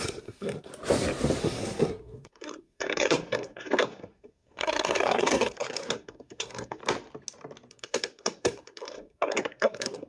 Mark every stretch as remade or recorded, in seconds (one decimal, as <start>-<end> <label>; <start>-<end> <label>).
0.0-0.7 remade; 0.7-1.4 recorded; 1.4-6.8 remade; 6.8-7.7 recorded; 7.7-10.1 remade